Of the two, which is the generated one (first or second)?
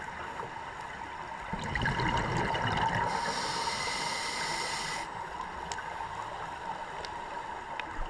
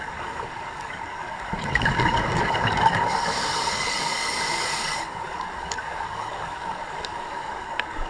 second